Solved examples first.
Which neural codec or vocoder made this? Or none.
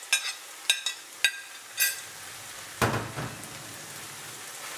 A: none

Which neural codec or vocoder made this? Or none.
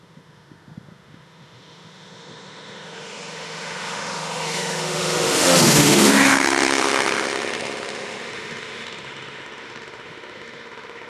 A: autoencoder, DAC-VAE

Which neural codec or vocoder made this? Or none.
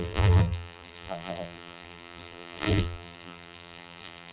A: vocoder, BigVGAN v2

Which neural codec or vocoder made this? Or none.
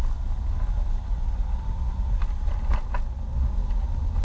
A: none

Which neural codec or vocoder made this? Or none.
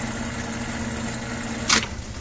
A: none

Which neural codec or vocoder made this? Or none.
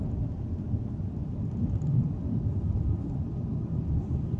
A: vocoder, BigVGAN v2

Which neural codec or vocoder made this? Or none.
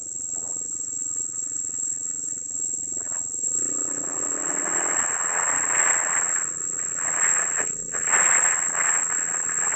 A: vocoder, WaveNeXt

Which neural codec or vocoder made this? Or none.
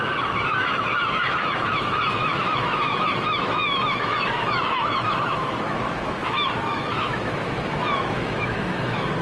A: autoencoder, DAC-VAE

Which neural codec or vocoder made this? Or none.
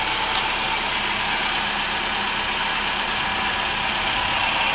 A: none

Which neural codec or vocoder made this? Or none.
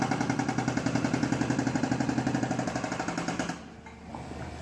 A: none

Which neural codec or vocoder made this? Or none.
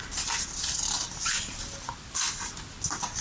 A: none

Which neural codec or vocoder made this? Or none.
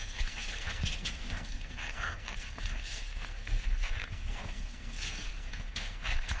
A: codec, SNAC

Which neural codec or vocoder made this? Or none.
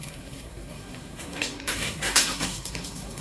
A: codec, SNAC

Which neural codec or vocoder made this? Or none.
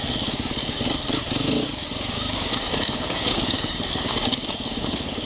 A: codec, DAC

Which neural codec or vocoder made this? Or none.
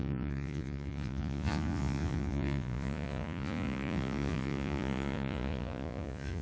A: vocoder, Vocos